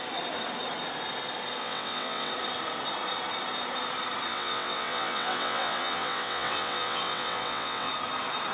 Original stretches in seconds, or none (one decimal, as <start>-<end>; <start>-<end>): 0.0-1.6; 2.3-4.3; 7.9-8.5